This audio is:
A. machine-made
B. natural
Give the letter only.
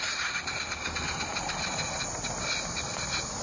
B